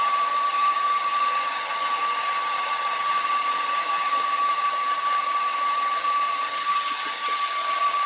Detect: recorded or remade remade